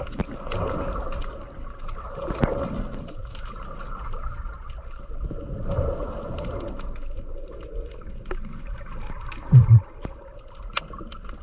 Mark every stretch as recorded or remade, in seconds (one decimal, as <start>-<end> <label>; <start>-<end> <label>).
0.0-11.4 recorded